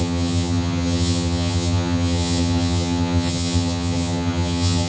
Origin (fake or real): fake